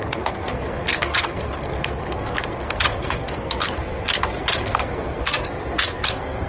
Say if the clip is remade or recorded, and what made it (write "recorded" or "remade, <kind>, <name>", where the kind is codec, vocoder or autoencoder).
remade, codec, SNAC